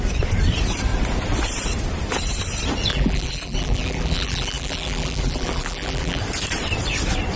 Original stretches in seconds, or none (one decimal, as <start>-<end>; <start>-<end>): 0.0-2.9; 6.2-7.4